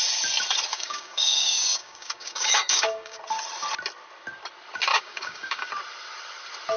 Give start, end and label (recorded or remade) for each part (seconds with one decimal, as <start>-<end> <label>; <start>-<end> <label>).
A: 0.0-0.7 recorded; 0.7-3.2 remade; 3.2-4.9 recorded; 4.9-5.7 remade; 5.7-6.8 recorded